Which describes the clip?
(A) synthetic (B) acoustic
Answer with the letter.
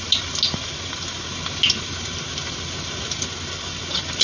B